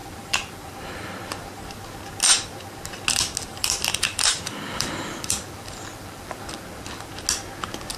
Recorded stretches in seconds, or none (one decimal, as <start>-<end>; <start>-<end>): 0.8-3.5; 7.1-8.0